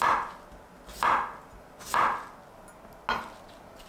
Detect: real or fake real